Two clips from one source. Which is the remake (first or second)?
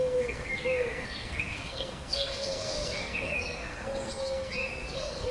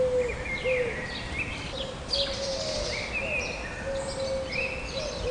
first